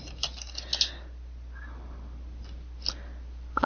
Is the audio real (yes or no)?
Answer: yes